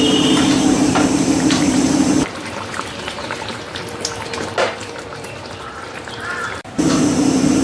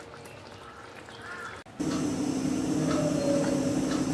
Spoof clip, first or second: first